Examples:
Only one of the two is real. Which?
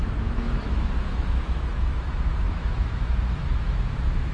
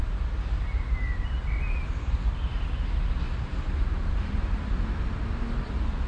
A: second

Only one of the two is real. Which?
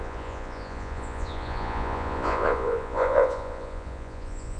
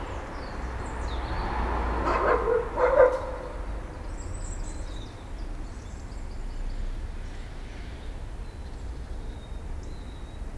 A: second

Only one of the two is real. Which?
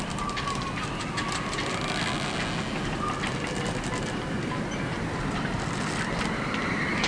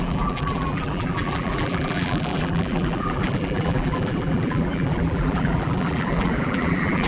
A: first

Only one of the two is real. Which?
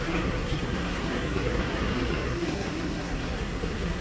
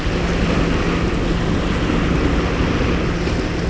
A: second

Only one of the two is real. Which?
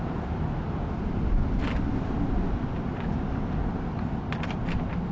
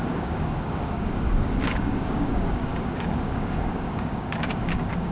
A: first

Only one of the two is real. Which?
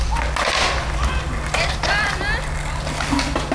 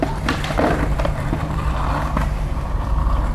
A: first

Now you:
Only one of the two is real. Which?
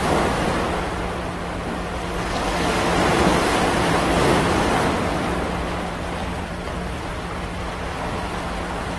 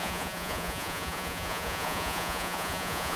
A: first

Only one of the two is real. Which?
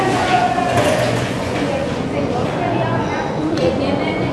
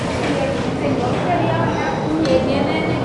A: second